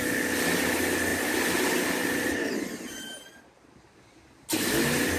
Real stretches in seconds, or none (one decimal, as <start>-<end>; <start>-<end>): 0.0-1.1; 4.2-5.2